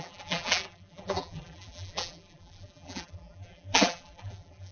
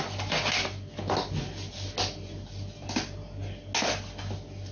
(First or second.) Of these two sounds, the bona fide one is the second